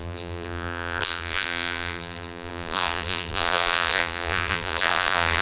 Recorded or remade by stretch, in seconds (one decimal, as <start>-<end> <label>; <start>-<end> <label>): 0.0-5.4 remade